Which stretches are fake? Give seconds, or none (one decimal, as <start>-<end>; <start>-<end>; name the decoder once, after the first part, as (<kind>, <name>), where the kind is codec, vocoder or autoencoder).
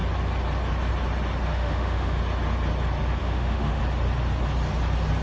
1.5-2.2 (autoencoder, DAC-VAE); 3.2-3.8